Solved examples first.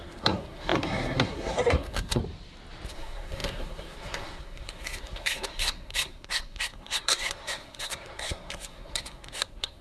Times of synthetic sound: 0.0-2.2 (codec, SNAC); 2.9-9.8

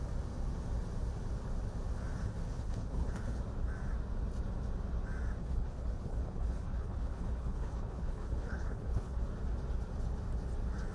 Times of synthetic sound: 2.2-3.4 (codec, HILCodec); 5.4-9.2

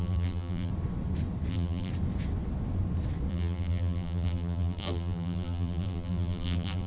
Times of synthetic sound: 0.0-0.7 (vocoder, BigVGAN v2); 1.5-1.9; 3.3-6.9

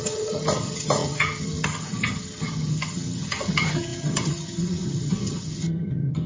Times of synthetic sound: 0.0-6.3 (vocoder, HiFi-GAN)